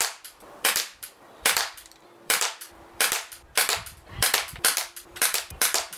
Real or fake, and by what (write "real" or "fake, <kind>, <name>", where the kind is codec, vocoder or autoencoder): fake, vocoder, BigVGAN v2